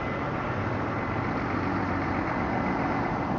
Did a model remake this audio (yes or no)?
no